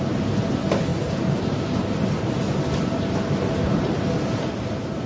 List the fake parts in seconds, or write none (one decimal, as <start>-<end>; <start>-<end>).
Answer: none